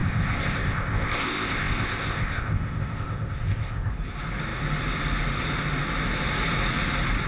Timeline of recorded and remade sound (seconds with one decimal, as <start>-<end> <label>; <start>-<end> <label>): 0.0-3.9 remade; 3.9-7.3 recorded